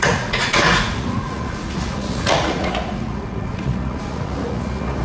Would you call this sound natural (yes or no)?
no